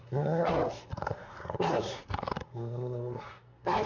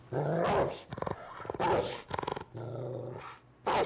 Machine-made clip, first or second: first